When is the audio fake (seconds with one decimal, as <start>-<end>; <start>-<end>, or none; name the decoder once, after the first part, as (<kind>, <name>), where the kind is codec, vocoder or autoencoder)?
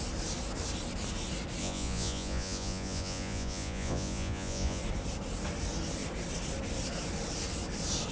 1.6-4.8 (vocoder, Vocos)